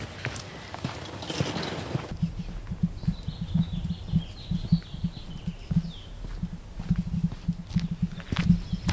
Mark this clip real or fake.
real